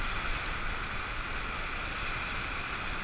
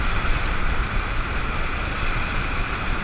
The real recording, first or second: first